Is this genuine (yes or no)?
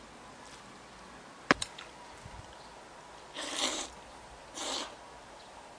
yes